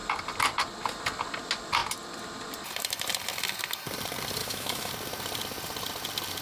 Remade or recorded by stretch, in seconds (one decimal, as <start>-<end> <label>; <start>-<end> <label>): 0.0-4.4 recorded; 4.4-4.9 remade; 4.9-6.4 recorded